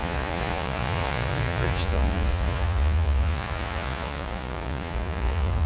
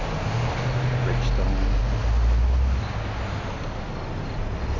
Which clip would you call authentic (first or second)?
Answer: second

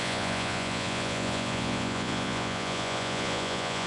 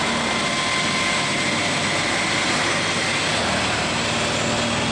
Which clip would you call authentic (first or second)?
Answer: second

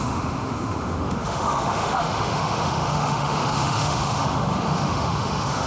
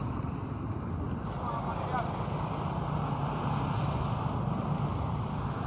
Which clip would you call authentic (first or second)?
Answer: second